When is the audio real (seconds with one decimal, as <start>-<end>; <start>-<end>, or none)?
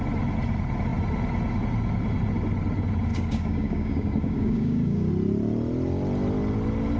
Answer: 0.0-3.1; 5.1-7.0